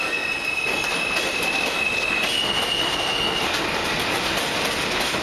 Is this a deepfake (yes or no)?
no